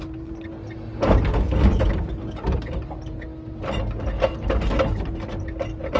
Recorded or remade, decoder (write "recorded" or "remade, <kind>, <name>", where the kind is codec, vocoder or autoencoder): recorded